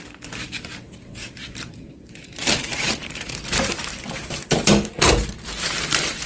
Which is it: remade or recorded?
remade